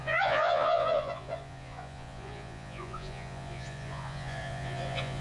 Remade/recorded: remade